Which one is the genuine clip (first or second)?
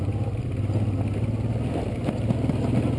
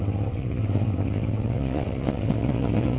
first